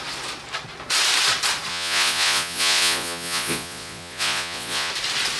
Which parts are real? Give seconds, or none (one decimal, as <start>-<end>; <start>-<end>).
0.0-1.7; 4.9-5.4